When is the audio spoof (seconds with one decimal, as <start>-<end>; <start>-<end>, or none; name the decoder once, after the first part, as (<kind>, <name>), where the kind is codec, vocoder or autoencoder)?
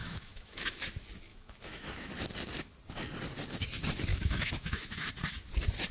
0.0-0.8 (autoencoder, DAC-VAE); 1.3-2.1; 4.1-5.1